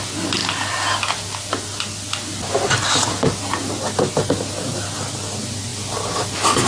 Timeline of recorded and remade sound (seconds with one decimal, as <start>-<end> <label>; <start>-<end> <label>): 0.0-6.7 recorded